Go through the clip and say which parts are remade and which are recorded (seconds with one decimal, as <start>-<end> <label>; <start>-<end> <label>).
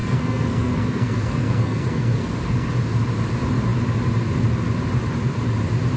0.0-2.7 remade; 2.7-6.0 recorded